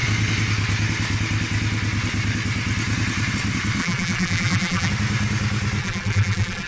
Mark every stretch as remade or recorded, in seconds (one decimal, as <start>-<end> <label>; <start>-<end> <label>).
0.0-3.8 recorded; 3.8-4.9 remade; 4.9-5.8 recorded; 5.8-6.7 remade